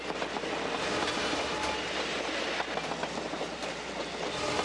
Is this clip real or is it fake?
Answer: real